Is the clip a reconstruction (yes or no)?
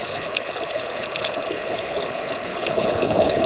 yes